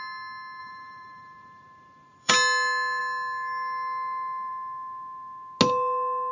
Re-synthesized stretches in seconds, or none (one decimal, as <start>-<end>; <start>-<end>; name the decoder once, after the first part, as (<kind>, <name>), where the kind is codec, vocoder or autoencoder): 0.6-2.3 (vocoder, BigVGAN v2)